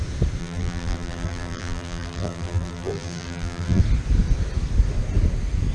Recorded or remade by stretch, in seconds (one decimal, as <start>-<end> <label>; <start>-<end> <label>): 0.0-0.4 recorded; 0.4-3.8 remade; 3.8-5.7 recorded